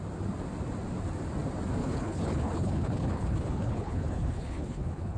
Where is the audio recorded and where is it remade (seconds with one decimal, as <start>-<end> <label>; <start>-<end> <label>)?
0.0-1.8 recorded; 1.8-5.2 remade